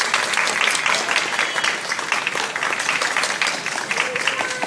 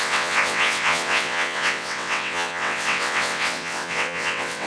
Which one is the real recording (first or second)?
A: first